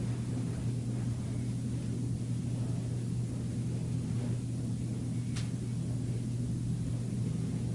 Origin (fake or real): real